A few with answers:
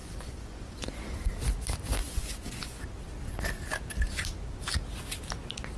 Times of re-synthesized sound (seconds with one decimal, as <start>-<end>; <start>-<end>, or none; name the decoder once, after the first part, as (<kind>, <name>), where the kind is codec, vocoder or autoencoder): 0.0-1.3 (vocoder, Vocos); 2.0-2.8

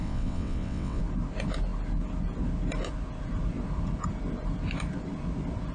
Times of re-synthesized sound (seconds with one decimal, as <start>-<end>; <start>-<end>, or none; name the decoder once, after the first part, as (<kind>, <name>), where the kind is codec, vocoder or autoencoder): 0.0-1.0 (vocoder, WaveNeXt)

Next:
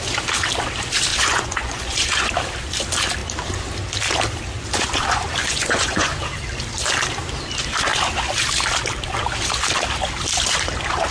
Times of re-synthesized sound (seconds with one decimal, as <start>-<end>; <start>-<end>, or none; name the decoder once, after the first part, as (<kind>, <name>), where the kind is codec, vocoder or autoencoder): 1.1-2.3 (vocoder, Vocos); 5.4-6.1